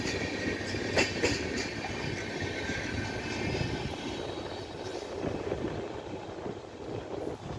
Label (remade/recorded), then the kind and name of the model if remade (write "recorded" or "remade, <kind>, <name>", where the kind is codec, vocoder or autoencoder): recorded